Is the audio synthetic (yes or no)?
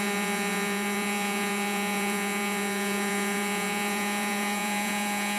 yes